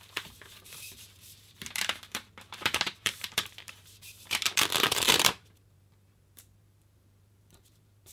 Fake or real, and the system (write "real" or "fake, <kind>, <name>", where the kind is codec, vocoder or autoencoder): fake, vocoder, BigVGAN v2